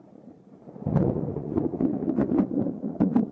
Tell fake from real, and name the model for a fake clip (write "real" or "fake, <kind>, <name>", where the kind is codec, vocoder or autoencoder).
fake, vocoder, Vocos